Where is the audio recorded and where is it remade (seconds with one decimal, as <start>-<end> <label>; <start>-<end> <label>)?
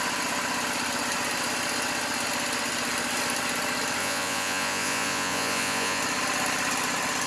0.0-4.0 recorded; 4.0-6.0 remade; 6.0-7.3 recorded